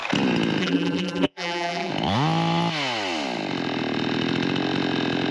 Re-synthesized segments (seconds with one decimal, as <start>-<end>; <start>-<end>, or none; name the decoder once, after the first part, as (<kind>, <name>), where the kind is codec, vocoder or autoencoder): 0.6-1.9 (vocoder, BigVGAN v2)